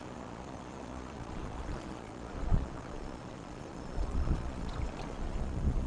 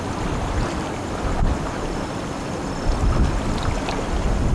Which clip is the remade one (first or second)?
first